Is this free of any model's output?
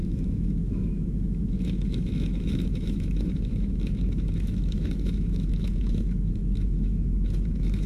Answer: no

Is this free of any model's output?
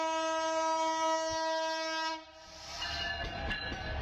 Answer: yes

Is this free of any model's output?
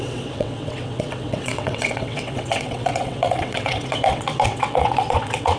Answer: no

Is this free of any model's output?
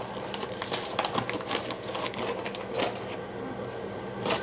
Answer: yes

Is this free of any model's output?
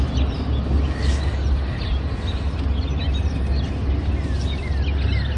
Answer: yes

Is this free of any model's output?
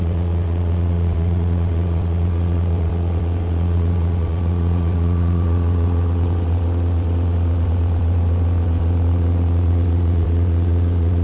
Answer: no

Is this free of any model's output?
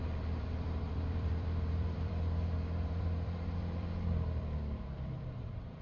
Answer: no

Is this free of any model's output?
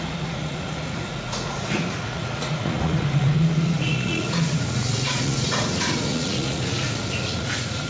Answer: no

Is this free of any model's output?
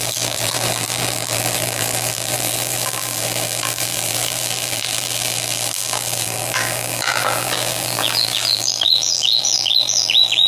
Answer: no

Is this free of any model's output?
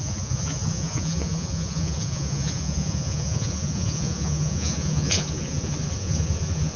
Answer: no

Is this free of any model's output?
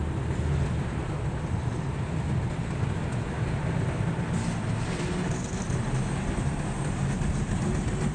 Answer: yes